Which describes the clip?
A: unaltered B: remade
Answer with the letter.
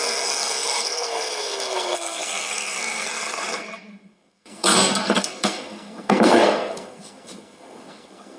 B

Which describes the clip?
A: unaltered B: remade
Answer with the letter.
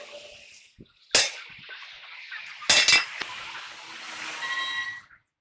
A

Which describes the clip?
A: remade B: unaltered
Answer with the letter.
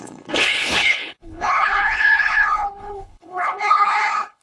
A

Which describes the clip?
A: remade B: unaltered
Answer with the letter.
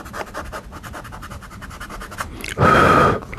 B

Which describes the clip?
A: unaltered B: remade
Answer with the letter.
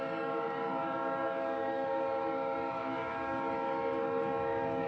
B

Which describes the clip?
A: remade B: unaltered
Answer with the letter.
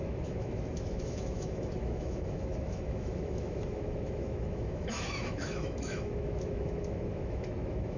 A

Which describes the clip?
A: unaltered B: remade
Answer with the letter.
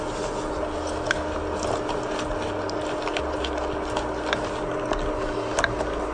A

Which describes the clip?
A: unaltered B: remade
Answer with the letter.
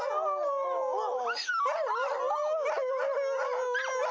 A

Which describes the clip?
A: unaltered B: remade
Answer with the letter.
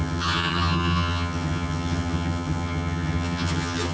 B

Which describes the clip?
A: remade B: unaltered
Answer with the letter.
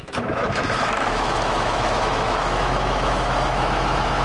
A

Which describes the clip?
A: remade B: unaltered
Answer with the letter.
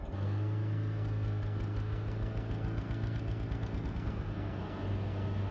A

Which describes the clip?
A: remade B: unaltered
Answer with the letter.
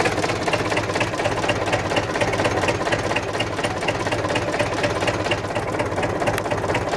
B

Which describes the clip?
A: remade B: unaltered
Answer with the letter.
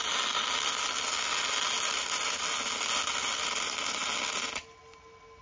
B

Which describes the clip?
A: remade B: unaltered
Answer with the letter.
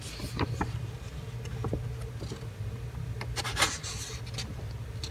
B